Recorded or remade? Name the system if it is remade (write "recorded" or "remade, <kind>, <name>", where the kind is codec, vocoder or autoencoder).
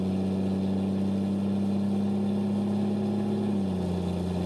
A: recorded